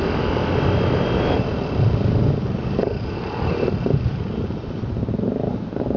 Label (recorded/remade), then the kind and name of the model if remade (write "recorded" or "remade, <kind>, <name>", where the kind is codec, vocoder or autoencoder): recorded